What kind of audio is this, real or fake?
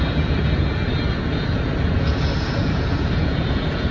fake